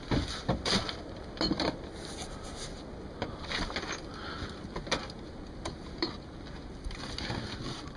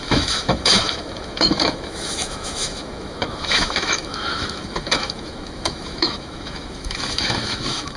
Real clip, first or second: first